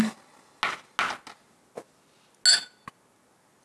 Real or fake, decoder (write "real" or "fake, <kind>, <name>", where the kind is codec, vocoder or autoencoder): real